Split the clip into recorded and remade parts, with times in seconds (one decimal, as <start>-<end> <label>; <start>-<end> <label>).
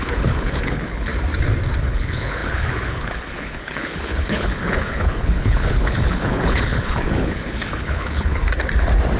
0.0-1.1 remade; 1.1-1.8 recorded; 1.8-8.4 remade; 8.4-9.2 recorded